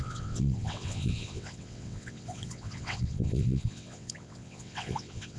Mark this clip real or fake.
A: fake